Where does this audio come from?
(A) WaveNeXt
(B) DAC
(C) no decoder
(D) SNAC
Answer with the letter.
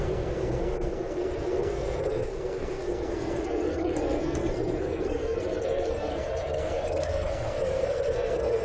D